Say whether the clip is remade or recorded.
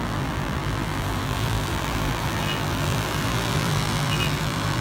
remade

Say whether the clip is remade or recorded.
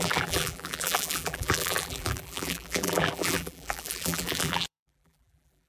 remade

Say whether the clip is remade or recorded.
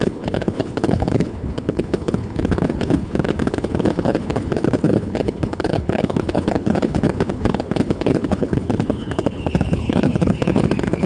remade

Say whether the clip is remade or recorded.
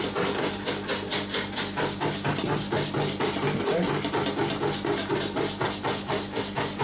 recorded